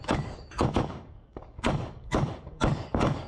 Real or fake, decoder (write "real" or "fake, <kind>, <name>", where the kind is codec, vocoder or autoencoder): fake, codec, DAC